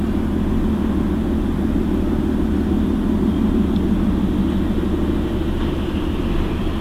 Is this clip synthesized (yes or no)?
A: no